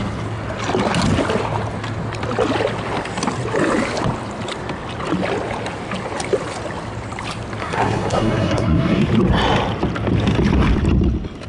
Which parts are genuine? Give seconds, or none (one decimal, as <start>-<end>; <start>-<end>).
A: 0.0-7.6; 9.0-11.5